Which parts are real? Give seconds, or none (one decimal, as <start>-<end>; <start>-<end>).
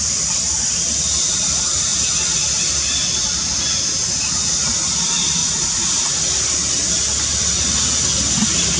0.0-5.4; 6.2-8.8